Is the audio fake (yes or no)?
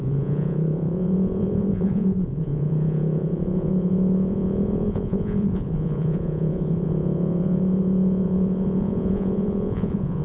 yes